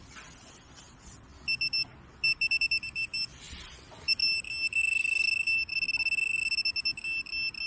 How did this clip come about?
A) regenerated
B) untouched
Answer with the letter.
B